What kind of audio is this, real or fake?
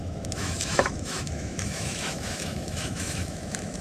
fake